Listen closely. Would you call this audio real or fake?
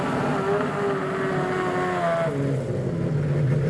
real